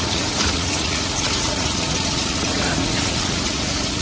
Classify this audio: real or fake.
fake